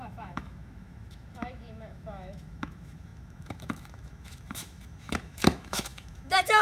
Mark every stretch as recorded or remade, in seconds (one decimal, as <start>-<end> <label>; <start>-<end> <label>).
0.0-6.6 remade

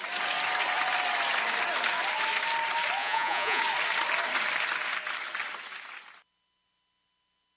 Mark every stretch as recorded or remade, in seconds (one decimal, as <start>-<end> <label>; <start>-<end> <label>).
0.0-3.0 recorded; 3.0-3.6 remade; 3.6-7.6 recorded

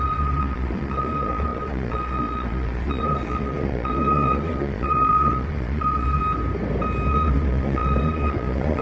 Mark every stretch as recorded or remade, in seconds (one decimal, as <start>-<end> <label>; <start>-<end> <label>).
0.0-6.2 remade; 6.2-7.1 recorded; 7.1-8.8 remade

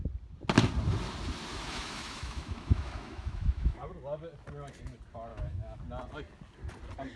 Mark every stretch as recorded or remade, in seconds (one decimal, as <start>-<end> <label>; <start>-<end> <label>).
0.0-1.5 recorded; 1.5-3.9 remade; 3.9-5.3 recorded; 5.3-5.8 remade; 5.8-7.2 recorded

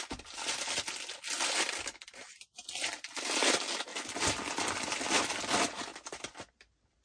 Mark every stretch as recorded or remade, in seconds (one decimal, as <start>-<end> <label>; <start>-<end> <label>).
0.0-3.9 recorded; 3.9-5.3 remade; 5.3-5.9 recorded; 5.9-7.0 remade

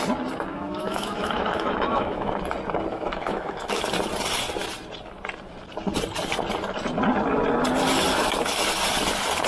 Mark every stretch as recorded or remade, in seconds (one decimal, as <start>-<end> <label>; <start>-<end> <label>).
0.0-0.5 recorded; 0.5-2.3 remade; 2.3-2.9 recorded; 2.9-3.8 remade; 3.8-9.5 recorded